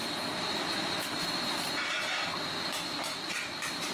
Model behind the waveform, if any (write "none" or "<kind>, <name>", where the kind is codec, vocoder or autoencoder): vocoder, BigVGAN v2